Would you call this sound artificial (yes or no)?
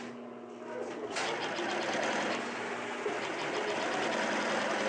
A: no